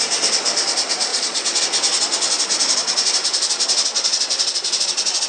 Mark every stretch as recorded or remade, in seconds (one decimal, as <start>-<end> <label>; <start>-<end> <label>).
0.0-1.1 recorded; 1.1-1.6 remade; 1.6-5.3 recorded

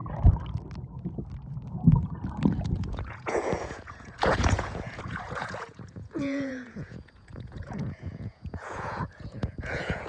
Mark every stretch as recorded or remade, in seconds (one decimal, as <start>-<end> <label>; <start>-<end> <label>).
0.0-2.5 recorded; 2.5-10.1 remade

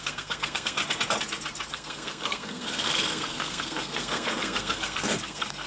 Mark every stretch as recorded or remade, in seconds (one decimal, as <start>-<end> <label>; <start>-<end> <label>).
0.0-0.8 remade; 0.8-1.7 recorded; 1.7-5.7 remade

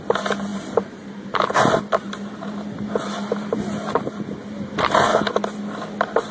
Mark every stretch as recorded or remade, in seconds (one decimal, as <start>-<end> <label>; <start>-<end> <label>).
0.0-6.3 recorded

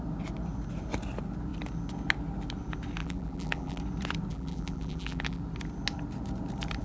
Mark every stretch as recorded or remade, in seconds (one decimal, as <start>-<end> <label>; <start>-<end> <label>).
0.0-3.0 recorded; 3.0-3.8 remade; 3.8-4.3 recorded; 4.3-5.4 remade; 5.4-6.8 recorded

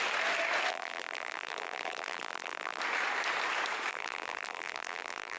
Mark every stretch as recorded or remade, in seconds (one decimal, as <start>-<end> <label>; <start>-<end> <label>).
0.0-0.7 recorded; 0.7-2.8 remade; 2.8-3.9 recorded; 3.9-5.4 remade

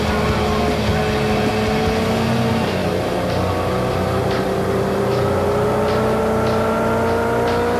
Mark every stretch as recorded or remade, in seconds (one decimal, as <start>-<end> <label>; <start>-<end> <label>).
0.0-0.9 recorded; 0.9-1.5 remade; 1.5-2.8 recorded; 2.8-6.2 remade; 6.2-7.8 recorded